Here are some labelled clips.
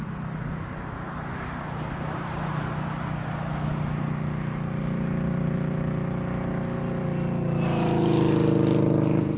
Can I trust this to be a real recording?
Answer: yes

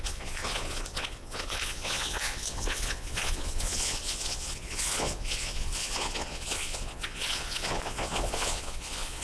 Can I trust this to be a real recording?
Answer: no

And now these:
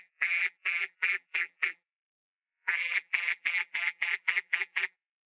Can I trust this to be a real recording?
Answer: no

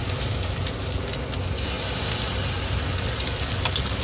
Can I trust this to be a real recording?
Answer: yes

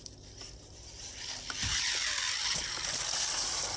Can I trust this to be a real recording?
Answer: yes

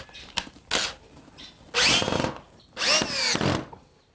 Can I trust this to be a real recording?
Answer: yes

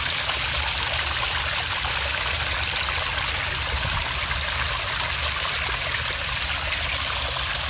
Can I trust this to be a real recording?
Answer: yes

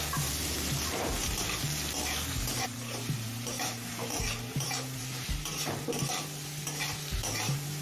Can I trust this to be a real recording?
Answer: no